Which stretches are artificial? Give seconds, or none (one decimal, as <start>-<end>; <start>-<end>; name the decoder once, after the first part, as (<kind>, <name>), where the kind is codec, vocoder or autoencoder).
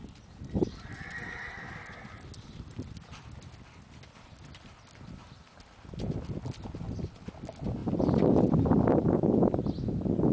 none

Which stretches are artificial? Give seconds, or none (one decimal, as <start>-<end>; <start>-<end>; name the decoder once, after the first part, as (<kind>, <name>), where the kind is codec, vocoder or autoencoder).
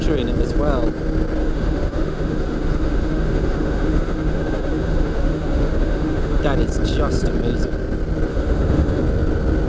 1.4-6.4 (autoencoder, DAC-VAE); 8.3-9.0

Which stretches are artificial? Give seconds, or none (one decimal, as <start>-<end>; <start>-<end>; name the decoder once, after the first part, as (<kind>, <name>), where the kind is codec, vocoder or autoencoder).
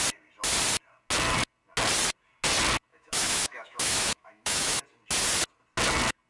2.9-4.8 (autoencoder, DAC-VAE)